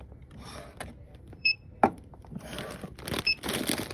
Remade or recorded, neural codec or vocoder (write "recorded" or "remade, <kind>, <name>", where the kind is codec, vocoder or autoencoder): remade, vocoder, BigVGAN v2